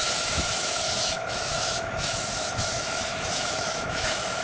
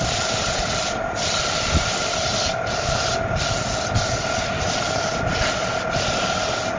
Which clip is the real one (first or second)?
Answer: second